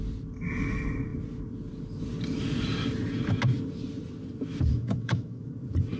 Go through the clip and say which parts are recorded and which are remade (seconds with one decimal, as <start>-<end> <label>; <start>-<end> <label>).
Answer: 0.0-4.7 recorded; 4.7-5.4 remade; 5.4-6.0 recorded